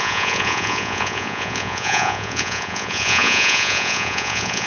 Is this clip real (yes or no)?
no